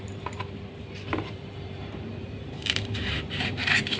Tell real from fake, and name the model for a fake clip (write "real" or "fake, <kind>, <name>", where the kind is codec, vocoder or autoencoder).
fake, vocoder, BigVGAN v2